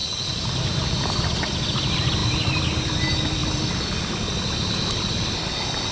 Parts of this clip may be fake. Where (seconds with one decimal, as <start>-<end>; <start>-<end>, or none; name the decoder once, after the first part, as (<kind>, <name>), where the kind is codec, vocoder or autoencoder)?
none